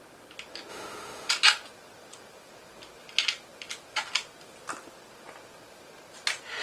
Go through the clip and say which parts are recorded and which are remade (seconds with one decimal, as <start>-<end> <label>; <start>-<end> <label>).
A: 0.0-0.7 recorded; 0.7-1.3 remade; 1.3-6.6 recorded